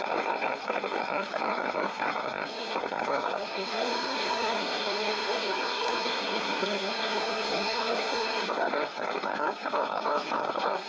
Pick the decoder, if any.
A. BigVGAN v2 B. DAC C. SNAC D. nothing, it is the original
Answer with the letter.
C